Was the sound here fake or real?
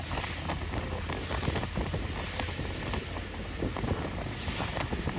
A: real